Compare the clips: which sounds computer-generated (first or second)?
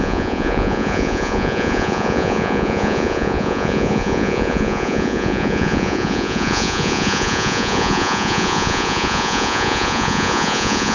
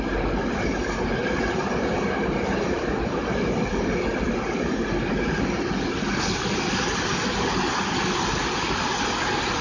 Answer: first